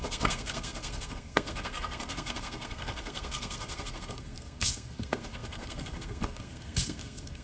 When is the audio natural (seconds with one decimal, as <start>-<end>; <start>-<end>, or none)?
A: none